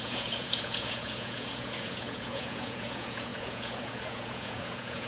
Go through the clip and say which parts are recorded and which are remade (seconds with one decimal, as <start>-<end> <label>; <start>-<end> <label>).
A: 0.0-5.1 remade